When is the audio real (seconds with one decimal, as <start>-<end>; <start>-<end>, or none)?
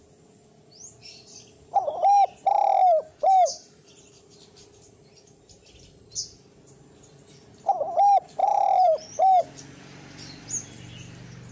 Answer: 0.0-2.9; 4.4-8.4; 9.4-11.5